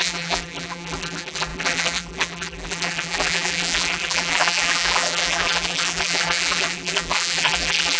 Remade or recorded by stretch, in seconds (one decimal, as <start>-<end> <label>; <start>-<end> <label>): 0.0-8.0 remade

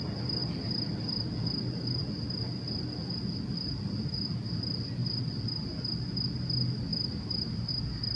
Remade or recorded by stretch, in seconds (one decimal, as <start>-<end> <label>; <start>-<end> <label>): 0.0-6.9 recorded; 6.9-7.7 remade; 7.7-8.2 recorded

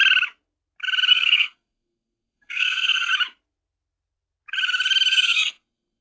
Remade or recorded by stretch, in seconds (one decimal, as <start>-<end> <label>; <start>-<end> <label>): 0.0-1.1 recorded; 1.1-3.1 remade; 3.1-5.1 recorded; 5.1-6.0 remade

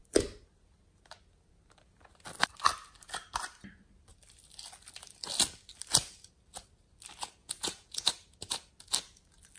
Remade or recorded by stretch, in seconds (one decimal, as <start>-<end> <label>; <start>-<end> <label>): 0.0-7.4 recorded; 7.4-8.1 remade; 8.1-9.6 recorded